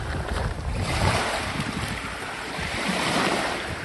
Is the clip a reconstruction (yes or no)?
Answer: yes